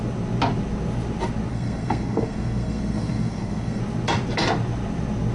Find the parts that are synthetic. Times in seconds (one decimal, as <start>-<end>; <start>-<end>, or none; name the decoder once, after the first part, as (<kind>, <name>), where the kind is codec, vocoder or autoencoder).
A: 1.5-3.8 (codec, SNAC)